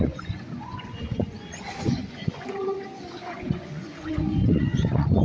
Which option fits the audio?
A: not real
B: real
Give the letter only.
A